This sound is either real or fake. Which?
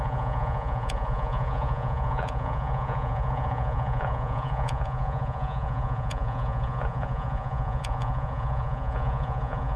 fake